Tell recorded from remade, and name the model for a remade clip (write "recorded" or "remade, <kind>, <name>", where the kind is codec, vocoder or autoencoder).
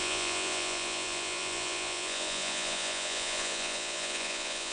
remade, vocoder, Vocos